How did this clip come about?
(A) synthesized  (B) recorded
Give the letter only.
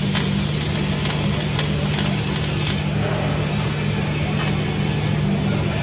B